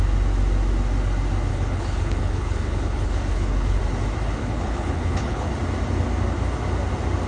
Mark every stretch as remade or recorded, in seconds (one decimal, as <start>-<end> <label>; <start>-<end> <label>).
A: 0.0-1.5 recorded; 1.5-3.8 remade; 3.8-4.4 recorded; 4.4-5.5 remade; 5.5-7.3 recorded